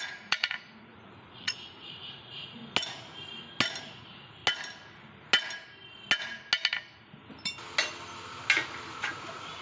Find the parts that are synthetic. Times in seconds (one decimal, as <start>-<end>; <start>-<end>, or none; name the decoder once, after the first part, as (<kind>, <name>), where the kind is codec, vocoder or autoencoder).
0.0-2.6 (vocoder, Vocos); 3.9-4.4; 9.0-9.6